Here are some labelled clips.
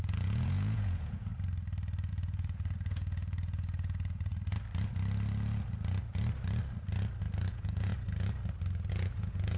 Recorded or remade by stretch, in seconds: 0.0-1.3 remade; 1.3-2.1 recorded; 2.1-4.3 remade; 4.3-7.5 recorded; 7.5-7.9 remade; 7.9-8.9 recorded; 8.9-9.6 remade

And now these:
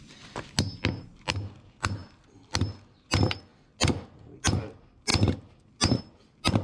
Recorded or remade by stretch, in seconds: 0.0-6.6 recorded

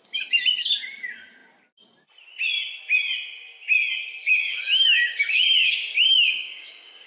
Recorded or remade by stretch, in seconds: 0.0-4.2 recorded; 4.2-7.1 remade

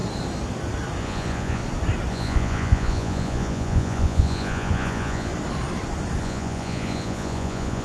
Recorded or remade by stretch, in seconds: 0.0-1.0 recorded; 1.0-1.6 remade; 1.6-2.1 recorded; 2.1-5.3 remade; 5.3-6.2 recorded; 6.2-7.8 remade

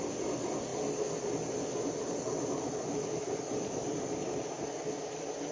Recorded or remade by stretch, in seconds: 0.0-5.5 recorded